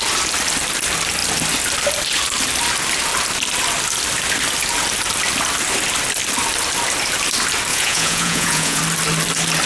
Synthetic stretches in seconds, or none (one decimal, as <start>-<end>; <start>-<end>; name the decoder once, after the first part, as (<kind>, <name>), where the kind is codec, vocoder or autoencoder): 7.7-8.8 (vocoder, Vocos)